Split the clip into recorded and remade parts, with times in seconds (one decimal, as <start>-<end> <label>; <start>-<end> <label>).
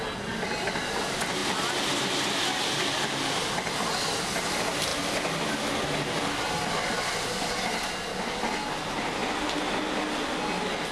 0.0-10.9 recorded